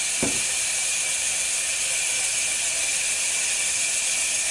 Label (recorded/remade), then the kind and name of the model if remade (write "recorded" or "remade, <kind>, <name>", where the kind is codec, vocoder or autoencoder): recorded